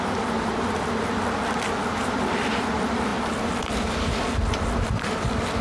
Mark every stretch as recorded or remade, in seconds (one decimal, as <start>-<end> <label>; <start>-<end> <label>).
0.0-5.6 recorded